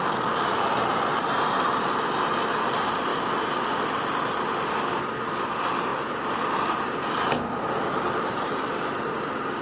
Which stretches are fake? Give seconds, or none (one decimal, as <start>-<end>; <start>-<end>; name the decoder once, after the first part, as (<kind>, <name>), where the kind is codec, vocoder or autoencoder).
none